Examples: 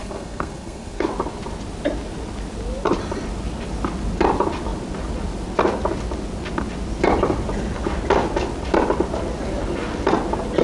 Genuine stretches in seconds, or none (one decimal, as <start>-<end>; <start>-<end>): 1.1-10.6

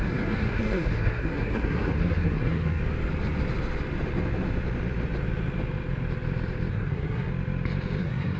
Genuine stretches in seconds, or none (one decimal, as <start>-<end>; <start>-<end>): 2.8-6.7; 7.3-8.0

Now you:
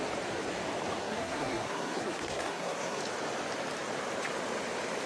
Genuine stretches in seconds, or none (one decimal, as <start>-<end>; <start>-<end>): 0.0-1.0; 3.0-5.1

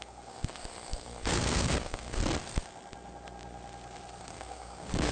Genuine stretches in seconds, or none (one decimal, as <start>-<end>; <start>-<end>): 2.2-4.2

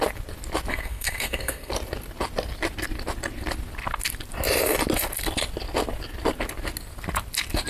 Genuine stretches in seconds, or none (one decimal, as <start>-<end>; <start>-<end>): 0.0-0.7; 1.7-7.7

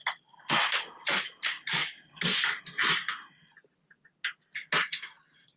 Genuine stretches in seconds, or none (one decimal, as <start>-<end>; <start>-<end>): 0.0-5.6

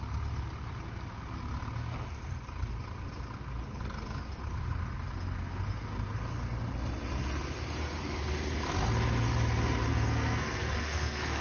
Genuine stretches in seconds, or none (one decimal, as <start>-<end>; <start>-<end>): 0.0-9.9